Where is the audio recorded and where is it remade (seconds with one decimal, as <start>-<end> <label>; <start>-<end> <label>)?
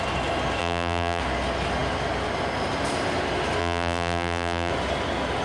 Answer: 0.0-0.6 recorded; 0.6-1.2 remade; 1.2-3.6 recorded; 3.6-4.7 remade; 4.7-5.4 recorded